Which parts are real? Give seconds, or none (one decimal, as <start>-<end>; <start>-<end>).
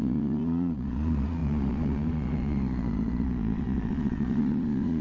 none